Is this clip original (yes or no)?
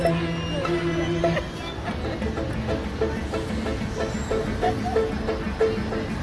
yes